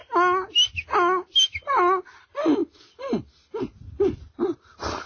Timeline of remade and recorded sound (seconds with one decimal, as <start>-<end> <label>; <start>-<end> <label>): 0.0-5.1 recorded